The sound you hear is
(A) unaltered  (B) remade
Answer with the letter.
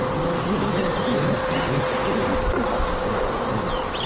A